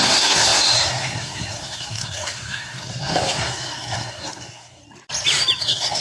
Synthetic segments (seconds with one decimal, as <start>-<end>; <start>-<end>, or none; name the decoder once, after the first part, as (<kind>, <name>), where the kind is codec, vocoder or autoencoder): 0.0-4.8 (codec, SNAC); 5.6-6.0